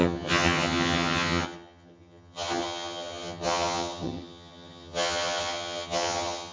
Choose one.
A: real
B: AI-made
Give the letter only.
B